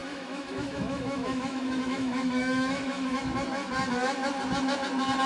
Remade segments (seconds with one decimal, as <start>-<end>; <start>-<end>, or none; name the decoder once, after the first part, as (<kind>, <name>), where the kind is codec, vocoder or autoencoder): 0.0-3.2 (autoencoder, DAC-VAE)